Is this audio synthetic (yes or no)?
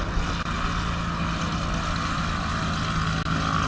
no